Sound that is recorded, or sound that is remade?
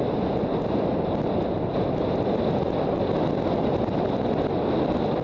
recorded